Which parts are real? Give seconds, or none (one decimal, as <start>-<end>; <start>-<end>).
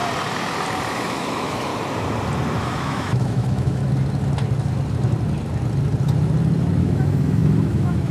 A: 0.0-0.9; 1.7-2.6; 3.8-6.8